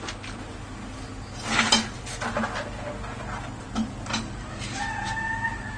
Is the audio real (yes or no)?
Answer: yes